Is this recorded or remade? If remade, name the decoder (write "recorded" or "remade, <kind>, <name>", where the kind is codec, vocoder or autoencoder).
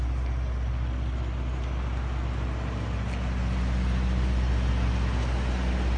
recorded